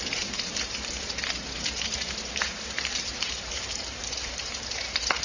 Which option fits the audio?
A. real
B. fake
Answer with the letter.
B